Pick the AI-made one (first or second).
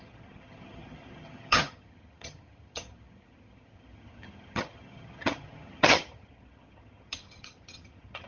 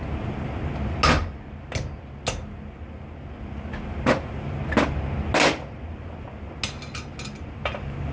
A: first